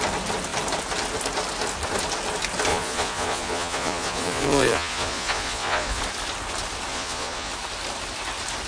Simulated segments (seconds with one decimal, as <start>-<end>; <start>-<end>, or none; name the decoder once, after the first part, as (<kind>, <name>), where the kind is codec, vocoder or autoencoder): 2.7-6.0 (vocoder, Vocos); 6.9-7.5